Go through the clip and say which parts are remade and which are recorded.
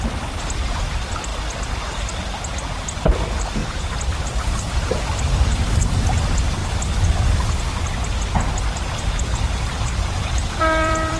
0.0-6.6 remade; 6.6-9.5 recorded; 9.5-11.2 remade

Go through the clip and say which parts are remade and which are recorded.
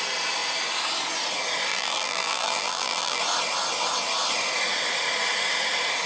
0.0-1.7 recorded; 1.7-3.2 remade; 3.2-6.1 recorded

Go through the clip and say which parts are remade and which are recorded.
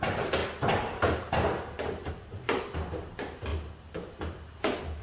0.0-0.4 remade; 0.4-2.1 recorded; 2.1-3.5 remade; 3.5-4.2 recorded; 4.2-5.0 remade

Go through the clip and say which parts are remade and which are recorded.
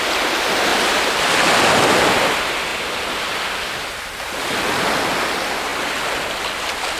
0.0-7.0 recorded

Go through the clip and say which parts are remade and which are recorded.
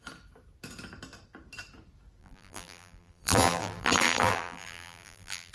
0.0-2.2 recorded; 2.2-5.5 remade